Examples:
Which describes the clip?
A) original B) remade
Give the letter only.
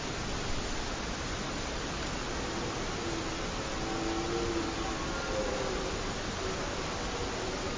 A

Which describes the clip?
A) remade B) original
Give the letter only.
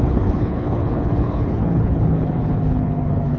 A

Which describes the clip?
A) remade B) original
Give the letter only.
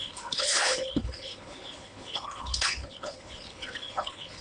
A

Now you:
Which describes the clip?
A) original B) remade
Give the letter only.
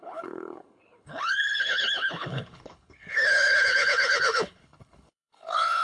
B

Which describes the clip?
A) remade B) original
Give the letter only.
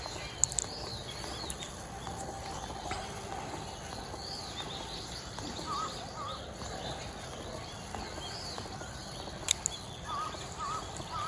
B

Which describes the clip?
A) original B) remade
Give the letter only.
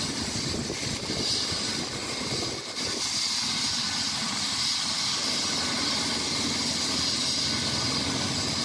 A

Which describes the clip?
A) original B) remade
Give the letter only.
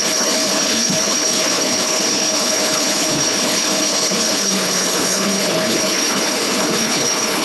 B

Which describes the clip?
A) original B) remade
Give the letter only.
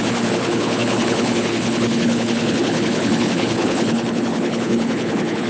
B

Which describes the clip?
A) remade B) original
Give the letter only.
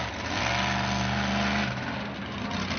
B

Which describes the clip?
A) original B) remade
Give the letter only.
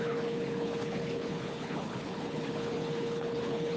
B